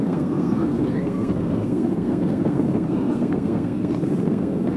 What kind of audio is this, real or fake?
fake